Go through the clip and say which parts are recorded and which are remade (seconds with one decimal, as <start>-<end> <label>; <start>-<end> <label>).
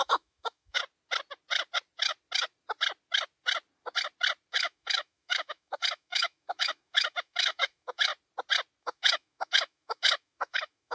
0.0-0.8 remade; 0.8-4.5 recorded; 4.5-8.1 remade; 8.1-8.8 recorded; 8.8-10.9 remade